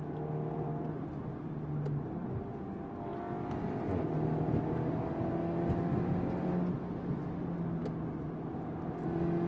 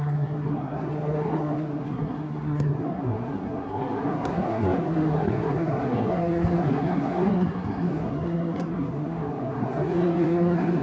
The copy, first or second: second